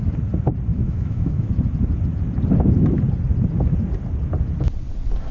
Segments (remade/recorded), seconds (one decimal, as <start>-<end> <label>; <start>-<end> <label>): 0.0-0.7 recorded; 0.7-1.5 remade; 1.5-5.3 recorded